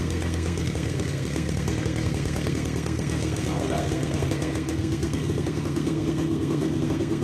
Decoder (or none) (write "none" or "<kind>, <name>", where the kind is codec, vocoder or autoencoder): codec, SNAC